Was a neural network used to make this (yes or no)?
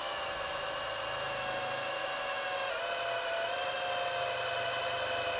no